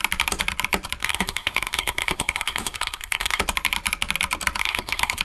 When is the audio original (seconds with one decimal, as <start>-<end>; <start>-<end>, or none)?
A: 0.0-1.0; 3.4-4.6